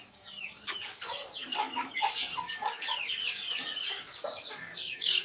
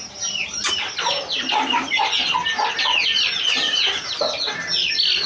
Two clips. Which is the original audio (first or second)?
second